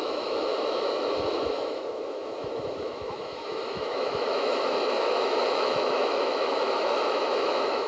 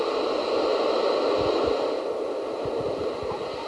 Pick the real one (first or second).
second